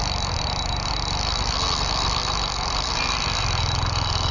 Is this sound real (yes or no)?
yes